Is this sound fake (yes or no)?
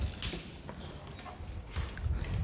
no